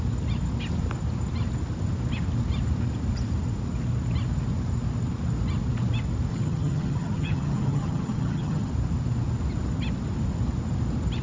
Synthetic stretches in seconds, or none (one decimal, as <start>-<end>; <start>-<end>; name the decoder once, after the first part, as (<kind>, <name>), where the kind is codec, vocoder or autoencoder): 6.3-8.7 (vocoder, HiFi-GAN)